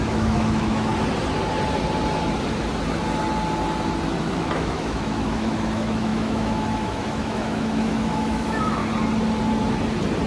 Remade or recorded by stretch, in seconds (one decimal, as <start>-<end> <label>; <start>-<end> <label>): 0.0-0.9 remade; 0.9-4.2 recorded; 4.2-8.8 remade; 8.8-10.3 recorded